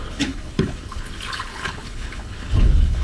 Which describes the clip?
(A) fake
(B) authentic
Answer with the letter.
A